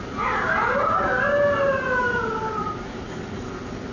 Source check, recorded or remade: recorded